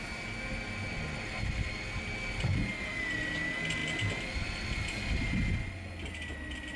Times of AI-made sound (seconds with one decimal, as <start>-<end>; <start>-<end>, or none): none